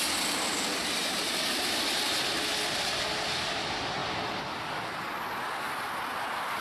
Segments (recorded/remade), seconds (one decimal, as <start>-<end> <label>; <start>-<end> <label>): 0.0-0.8 recorded; 0.8-1.4 remade; 1.4-6.6 recorded